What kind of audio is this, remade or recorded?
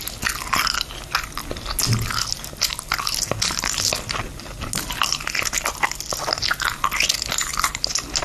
recorded